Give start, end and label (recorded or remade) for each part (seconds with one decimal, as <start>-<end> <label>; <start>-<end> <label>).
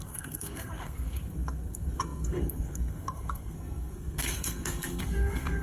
0.0-5.6 remade